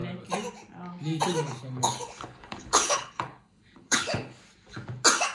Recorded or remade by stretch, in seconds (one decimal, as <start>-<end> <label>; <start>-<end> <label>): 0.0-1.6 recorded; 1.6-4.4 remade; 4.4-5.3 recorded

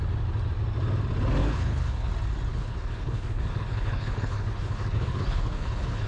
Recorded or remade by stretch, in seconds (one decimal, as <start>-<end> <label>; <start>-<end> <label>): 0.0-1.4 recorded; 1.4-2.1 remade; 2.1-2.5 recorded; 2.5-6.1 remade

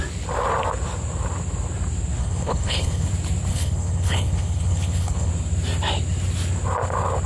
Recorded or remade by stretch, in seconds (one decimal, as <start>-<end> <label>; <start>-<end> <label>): 0.0-2.2 recorded; 2.2-3.1 remade; 3.1-3.5 recorded; 3.5-5.3 remade; 5.3-7.3 recorded

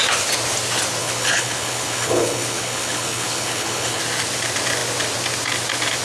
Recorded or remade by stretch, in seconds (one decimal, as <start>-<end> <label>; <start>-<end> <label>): 0.0-1.0 recorded; 1.0-4.0 remade; 4.0-6.0 recorded